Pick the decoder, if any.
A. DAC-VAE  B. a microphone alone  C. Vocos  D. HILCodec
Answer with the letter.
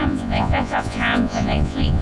C